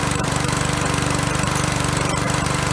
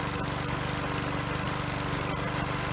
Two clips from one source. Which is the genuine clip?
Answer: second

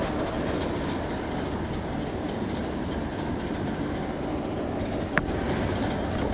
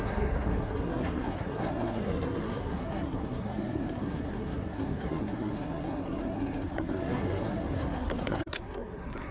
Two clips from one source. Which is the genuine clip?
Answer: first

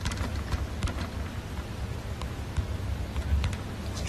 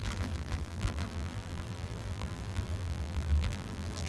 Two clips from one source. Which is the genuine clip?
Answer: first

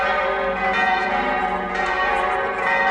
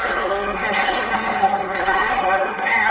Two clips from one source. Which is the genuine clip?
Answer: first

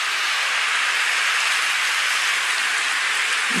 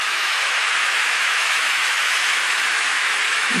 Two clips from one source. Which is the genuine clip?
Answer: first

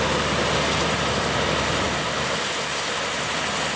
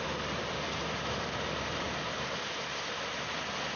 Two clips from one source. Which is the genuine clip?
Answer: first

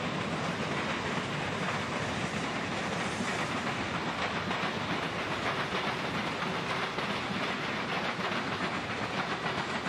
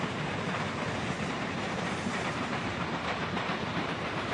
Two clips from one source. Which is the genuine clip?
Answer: first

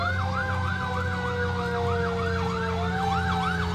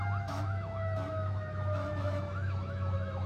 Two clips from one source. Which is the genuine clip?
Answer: first